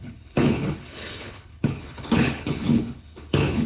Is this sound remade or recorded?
remade